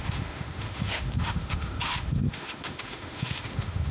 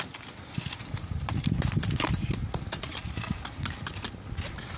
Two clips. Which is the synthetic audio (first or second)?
first